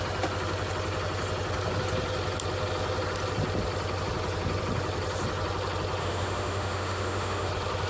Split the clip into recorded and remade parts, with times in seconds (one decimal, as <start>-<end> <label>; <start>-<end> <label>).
0.0-6.0 recorded; 6.0-7.5 remade; 7.5-7.9 recorded